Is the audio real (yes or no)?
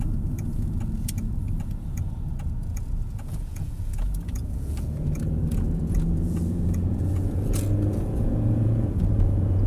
no